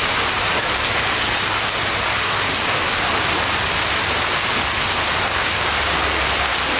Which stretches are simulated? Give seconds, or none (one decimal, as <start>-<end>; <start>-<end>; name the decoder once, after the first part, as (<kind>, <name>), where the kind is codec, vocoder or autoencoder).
none